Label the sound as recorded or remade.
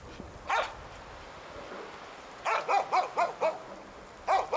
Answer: recorded